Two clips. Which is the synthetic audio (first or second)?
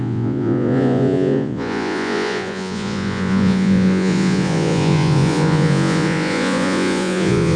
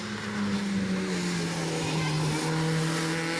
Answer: first